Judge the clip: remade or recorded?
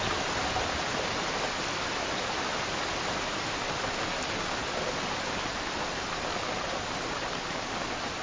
recorded